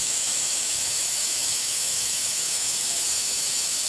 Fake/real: fake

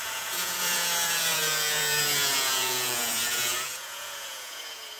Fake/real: fake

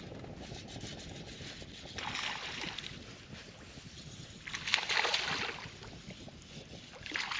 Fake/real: real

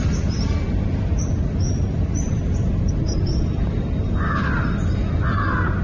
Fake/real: real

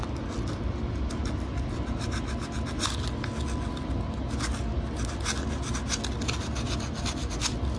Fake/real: real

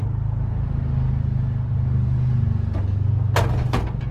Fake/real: real